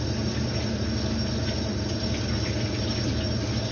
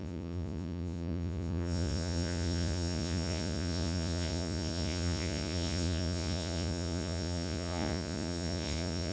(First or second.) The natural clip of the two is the first